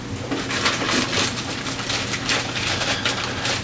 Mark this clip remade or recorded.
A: recorded